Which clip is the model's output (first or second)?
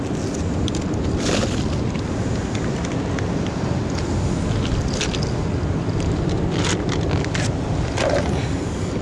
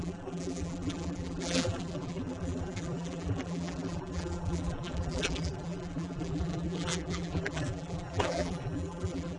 second